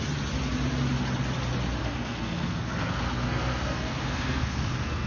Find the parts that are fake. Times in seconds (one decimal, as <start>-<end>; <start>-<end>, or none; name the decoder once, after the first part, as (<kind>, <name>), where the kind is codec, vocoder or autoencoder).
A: 1.8-5.1 (codec, SNAC)